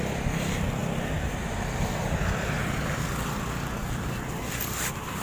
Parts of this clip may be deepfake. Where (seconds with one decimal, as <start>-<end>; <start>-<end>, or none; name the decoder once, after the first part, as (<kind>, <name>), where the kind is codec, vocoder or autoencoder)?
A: none